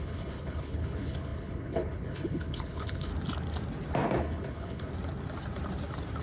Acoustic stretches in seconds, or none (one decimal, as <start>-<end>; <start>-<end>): 3.1-4.2; 4.9-6.2

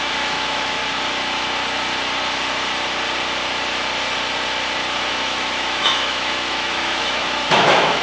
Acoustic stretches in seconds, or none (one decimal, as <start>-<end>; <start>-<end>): 0.8-5.1